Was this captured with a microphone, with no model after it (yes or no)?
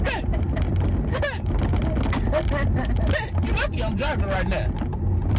yes